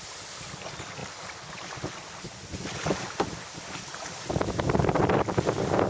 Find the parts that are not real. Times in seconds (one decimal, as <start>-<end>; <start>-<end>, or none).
none